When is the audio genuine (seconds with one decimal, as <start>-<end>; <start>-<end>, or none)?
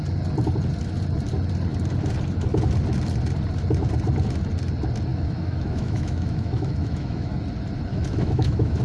0.0-5.1; 7.4-7.9